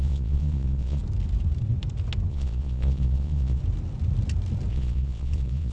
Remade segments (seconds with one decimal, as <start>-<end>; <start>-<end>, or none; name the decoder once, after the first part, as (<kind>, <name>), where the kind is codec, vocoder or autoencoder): 0.0-1.0 (vocoder, Vocos); 2.3-3.6; 4.7-5.7